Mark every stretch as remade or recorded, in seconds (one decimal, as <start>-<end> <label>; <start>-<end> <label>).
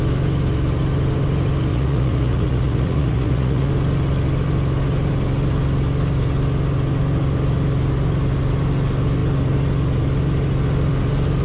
0.0-1.7 recorded; 1.7-3.7 remade; 3.7-11.4 recorded